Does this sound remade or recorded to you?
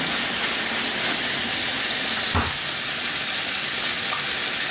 recorded